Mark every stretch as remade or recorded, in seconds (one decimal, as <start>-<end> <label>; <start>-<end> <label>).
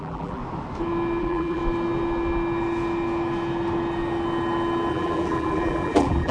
0.0-0.4 remade; 0.4-1.2 recorded; 1.2-1.6 remade; 1.6-4.9 recorded; 4.9-6.3 remade